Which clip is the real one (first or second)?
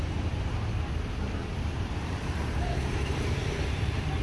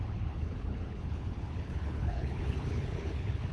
first